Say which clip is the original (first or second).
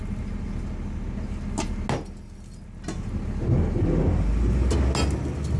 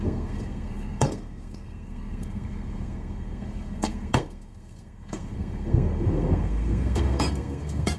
first